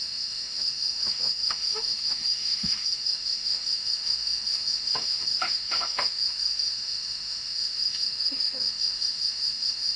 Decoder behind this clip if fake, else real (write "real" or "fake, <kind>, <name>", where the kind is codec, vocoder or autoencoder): fake, autoencoder, DAC-VAE